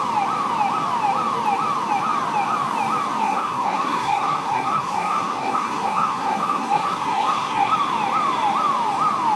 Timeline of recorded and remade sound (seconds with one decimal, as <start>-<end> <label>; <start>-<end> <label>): 0.0-3.2 recorded; 3.2-7.7 remade; 7.7-9.4 recorded